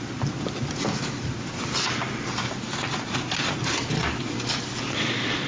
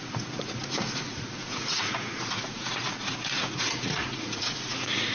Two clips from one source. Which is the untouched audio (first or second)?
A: first